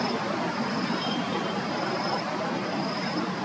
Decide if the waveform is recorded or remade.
remade